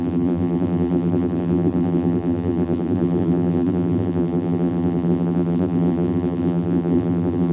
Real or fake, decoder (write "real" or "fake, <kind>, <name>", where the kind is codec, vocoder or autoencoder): fake, vocoder, BigVGAN v2